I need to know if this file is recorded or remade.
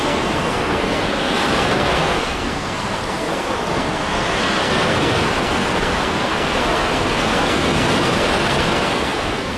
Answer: remade